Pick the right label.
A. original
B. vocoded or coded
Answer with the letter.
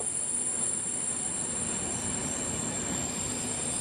A